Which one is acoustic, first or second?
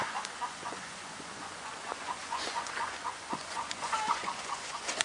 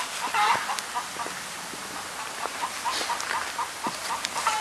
second